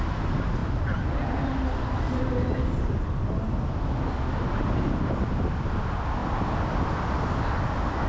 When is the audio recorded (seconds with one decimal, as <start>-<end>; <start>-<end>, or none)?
0.0-0.6; 2.8-6.2; 6.9-8.1